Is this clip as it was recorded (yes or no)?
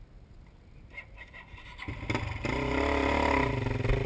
yes